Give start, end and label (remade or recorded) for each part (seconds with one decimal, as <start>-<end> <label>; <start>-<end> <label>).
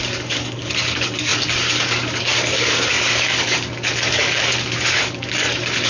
0.0-5.9 remade